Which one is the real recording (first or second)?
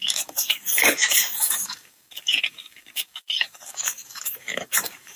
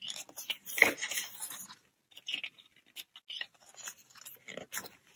second